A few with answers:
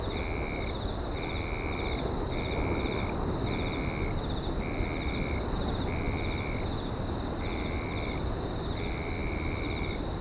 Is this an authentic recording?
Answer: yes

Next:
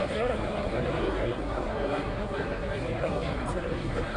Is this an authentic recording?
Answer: no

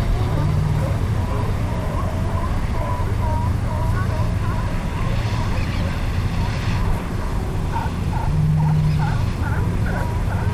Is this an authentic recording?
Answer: yes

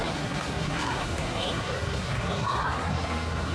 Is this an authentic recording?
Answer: no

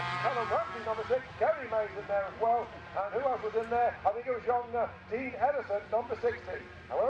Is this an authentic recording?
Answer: yes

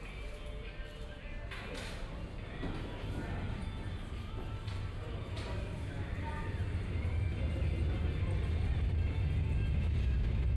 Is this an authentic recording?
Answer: yes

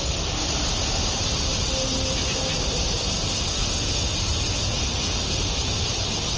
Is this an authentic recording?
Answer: yes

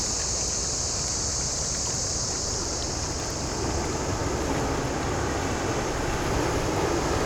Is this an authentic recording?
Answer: yes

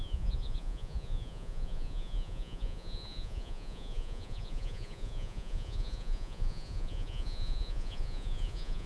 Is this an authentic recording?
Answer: no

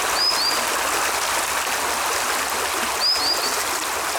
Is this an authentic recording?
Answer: yes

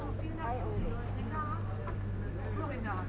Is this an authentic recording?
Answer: yes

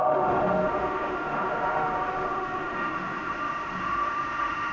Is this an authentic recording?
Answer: no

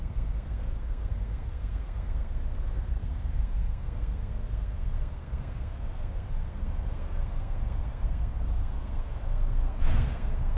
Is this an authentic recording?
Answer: no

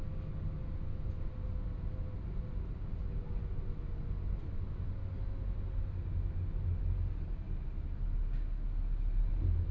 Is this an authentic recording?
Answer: yes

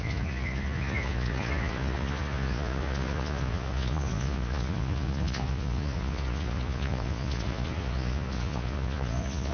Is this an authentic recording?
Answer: no